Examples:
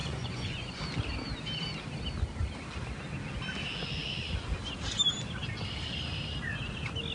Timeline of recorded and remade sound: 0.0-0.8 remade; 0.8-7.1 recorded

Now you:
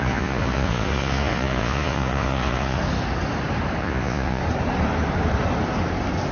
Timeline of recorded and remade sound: 0.0-2.8 remade; 2.8-3.8 recorded; 3.8-4.4 remade; 4.4-6.3 recorded

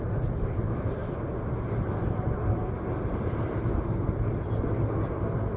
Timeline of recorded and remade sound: 0.0-5.6 recorded

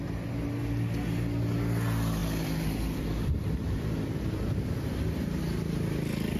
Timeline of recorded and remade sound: 0.0-2.2 recorded; 2.2-5.4 remade; 5.4-6.4 recorded

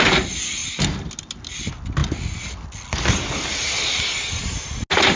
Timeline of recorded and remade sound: 0.0-5.2 recorded